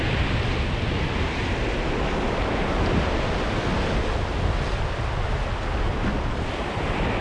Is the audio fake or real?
real